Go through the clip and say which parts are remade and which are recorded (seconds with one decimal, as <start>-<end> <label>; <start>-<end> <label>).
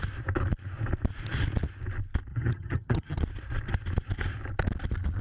0.0-2.3 recorded; 2.3-3.2 remade; 3.2-5.2 recorded